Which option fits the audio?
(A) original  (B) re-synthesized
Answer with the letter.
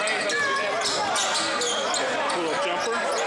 A